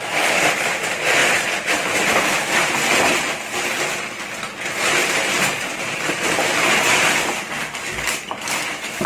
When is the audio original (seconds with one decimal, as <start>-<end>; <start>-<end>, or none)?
0.0-5.0; 7.1-9.1